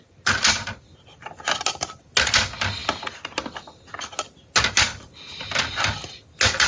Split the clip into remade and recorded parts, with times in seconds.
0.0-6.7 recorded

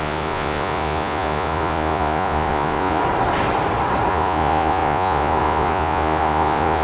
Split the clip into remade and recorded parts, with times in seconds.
0.0-3.0 remade; 3.0-4.1 recorded; 4.1-6.8 remade

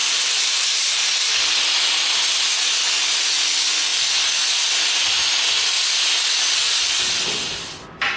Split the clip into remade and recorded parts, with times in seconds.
0.0-1.2 remade; 1.2-8.2 recorded